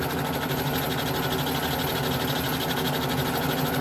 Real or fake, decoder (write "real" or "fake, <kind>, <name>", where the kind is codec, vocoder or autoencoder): real